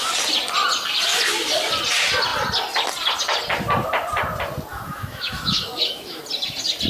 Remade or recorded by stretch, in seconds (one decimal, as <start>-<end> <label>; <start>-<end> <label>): 0.0-4.7 recorded; 4.7-6.2 remade; 6.2-6.9 recorded